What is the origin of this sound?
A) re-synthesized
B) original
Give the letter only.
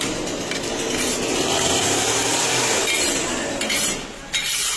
B